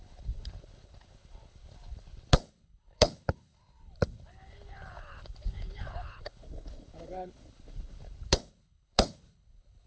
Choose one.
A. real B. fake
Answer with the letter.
B